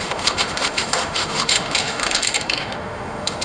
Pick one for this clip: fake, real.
fake